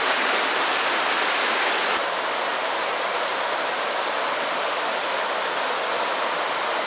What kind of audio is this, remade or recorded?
recorded